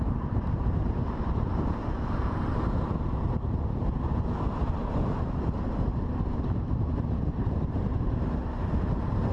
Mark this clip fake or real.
fake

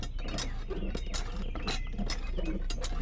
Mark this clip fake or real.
real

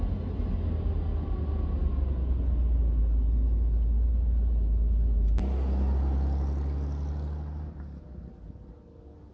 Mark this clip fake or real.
real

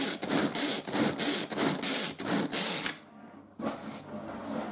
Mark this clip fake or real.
real